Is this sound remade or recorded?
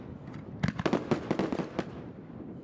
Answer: recorded